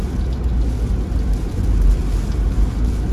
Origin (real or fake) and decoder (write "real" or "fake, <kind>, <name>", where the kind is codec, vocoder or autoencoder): real